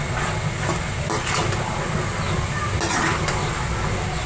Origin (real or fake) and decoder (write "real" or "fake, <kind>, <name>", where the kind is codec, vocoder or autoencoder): real